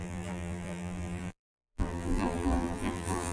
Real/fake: fake